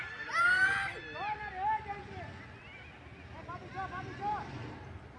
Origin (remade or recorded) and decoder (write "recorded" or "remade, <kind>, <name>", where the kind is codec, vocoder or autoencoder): recorded